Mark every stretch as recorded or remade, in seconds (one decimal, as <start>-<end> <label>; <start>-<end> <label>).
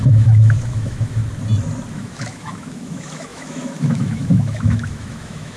0.0-1.2 remade; 1.2-1.9 recorded; 1.9-5.6 remade